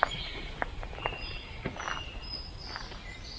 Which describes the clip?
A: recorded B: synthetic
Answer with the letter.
B